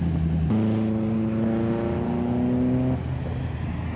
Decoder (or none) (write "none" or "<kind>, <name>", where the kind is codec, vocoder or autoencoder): none